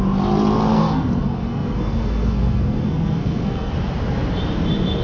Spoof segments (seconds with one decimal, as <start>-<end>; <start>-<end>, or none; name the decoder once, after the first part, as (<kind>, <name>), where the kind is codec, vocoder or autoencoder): 0.7-3.7 (codec, SNAC)